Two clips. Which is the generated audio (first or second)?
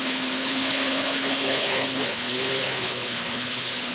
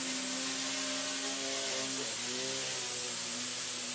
first